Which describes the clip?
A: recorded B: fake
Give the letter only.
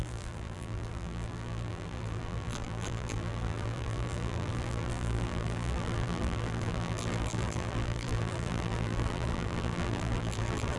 B